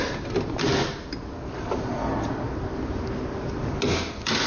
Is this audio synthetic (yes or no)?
no